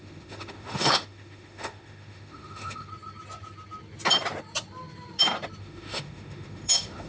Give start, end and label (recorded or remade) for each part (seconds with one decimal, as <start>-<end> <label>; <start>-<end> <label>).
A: 0.0-2.9 remade; 2.9-5.6 recorded; 5.6-7.1 remade